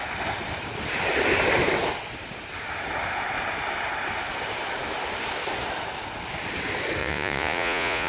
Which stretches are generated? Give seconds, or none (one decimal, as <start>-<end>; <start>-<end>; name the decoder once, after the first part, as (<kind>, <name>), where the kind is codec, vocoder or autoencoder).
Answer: 7.0-8.1 (vocoder, Vocos)